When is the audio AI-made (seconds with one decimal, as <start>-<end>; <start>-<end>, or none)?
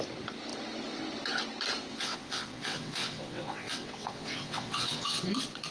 1.9-5.3